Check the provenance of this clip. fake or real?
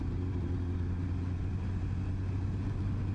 real